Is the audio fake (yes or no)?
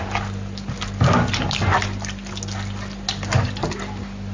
no